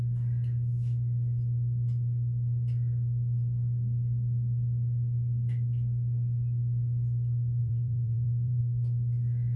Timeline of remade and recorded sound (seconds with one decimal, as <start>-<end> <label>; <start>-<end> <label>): 0.0-7.6 recorded; 7.6-8.6 remade; 8.6-9.6 recorded